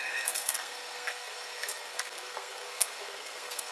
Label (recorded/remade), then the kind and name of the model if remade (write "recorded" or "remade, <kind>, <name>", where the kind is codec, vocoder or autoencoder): remade, codec, SNAC